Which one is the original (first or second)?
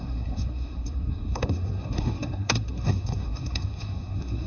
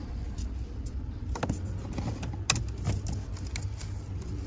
second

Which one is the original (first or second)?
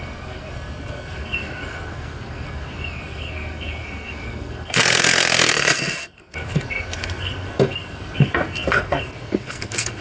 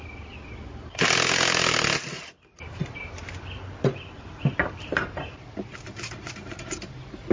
second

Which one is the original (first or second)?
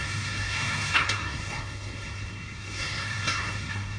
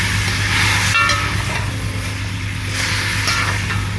second